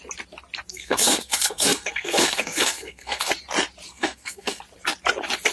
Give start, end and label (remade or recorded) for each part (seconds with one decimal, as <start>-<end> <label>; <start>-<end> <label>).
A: 0.0-0.7 recorded; 0.7-3.3 remade; 3.3-3.9 recorded; 3.9-4.6 remade; 4.6-5.5 recorded